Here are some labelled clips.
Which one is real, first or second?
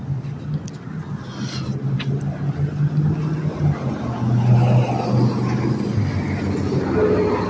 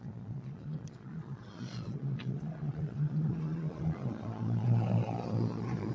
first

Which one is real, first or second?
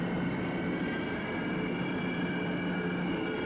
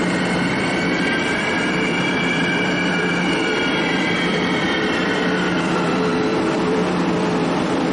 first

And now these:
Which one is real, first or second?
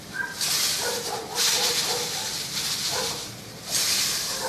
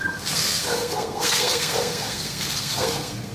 first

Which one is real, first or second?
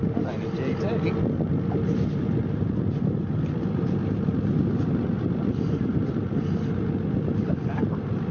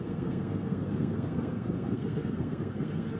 first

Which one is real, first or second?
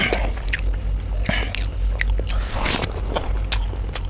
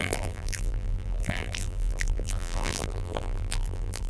first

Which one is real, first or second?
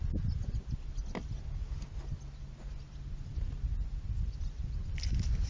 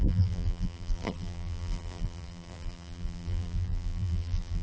first